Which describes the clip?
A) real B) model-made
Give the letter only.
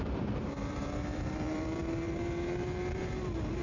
B